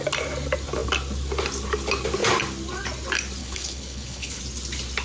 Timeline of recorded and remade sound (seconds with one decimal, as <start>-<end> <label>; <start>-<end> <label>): 0.0-3.4 recorded; 3.4-4.4 remade; 4.4-5.0 recorded